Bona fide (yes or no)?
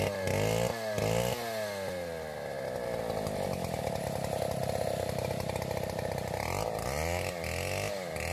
yes